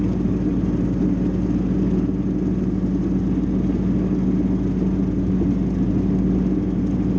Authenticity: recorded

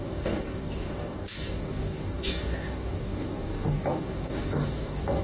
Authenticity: remade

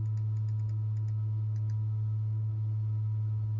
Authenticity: recorded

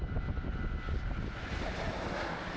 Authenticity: recorded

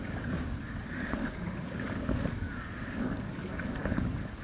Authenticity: remade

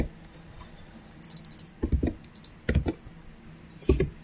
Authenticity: recorded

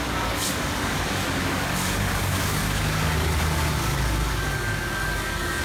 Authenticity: remade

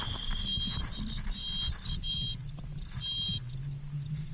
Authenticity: recorded